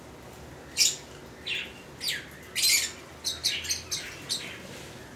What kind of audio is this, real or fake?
real